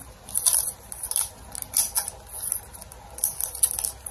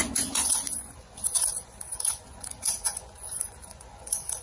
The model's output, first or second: second